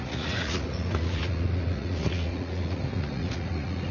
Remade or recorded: remade